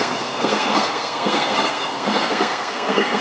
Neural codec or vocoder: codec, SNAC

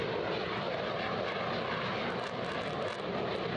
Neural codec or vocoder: none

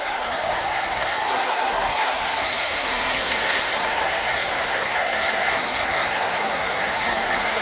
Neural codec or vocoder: codec, SNAC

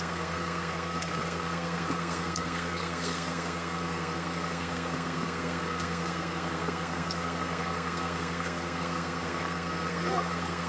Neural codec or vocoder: codec, SNAC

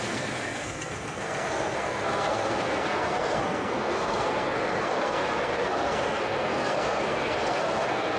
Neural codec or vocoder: codec, SNAC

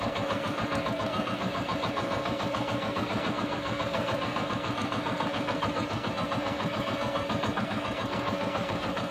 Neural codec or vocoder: codec, SNAC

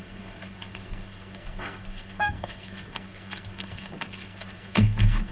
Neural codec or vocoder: codec, SNAC